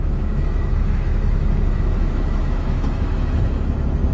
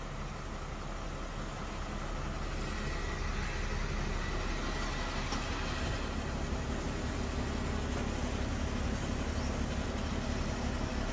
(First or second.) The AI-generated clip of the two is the first